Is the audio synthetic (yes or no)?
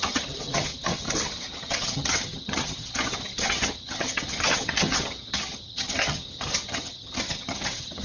yes